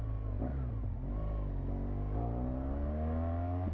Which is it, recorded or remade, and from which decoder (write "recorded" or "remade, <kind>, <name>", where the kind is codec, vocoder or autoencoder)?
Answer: recorded